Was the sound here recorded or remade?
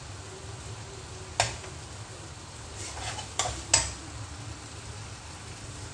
recorded